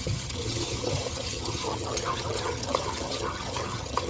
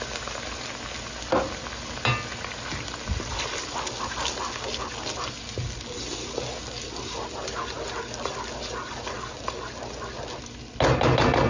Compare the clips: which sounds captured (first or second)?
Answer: second